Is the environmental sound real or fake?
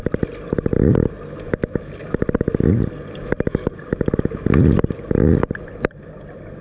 real